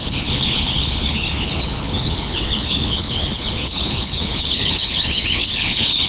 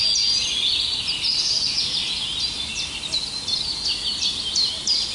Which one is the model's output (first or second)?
first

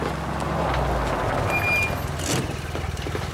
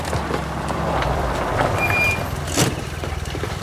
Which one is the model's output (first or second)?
second